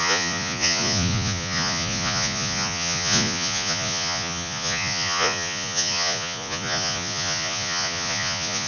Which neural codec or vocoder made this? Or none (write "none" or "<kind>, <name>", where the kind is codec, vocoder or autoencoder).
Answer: vocoder, Vocos